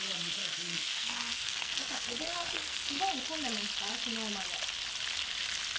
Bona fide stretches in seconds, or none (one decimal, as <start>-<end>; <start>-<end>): 0.0-0.4; 3.0-5.8

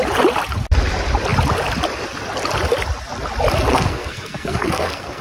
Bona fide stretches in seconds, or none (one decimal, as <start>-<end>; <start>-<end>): 0.0-3.7

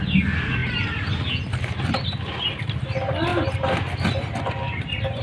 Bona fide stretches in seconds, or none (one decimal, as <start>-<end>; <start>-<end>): 0.0-5.2

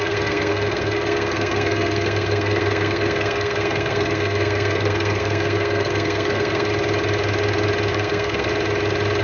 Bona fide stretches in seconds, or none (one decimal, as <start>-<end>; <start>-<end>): 6.7-7.9; 8.5-9.2

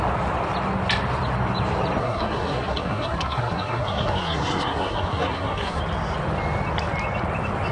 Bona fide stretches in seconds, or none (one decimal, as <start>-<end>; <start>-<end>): 0.0-2.0; 5.8-7.7